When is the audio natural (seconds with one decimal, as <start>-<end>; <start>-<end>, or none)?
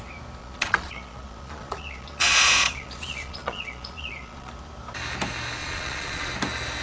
0.0-0.4; 4.5-5.6; 6.3-6.8